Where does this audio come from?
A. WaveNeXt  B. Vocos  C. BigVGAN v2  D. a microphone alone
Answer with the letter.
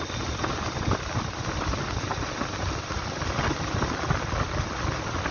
D